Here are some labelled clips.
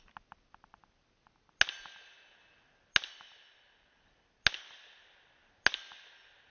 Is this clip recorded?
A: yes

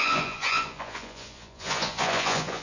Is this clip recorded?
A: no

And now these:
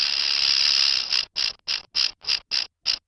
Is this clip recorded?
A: yes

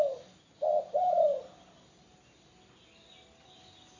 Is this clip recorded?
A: yes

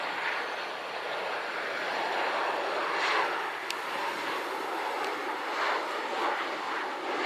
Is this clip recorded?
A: yes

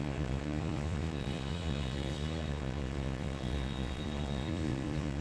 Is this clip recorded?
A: no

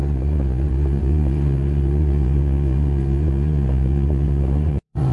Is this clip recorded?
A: no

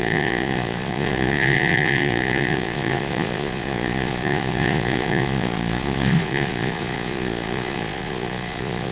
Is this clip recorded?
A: no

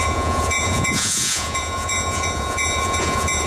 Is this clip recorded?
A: no